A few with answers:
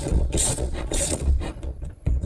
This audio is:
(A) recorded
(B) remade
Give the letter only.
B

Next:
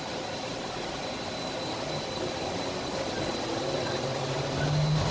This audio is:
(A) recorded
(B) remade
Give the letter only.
A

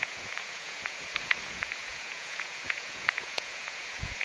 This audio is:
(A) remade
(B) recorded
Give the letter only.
A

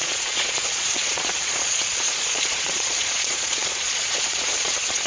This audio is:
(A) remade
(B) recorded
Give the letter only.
A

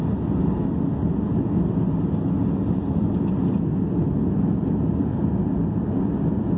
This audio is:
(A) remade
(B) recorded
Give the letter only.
B